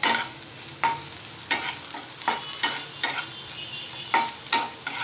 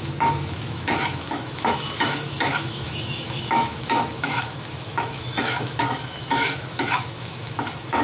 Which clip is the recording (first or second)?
first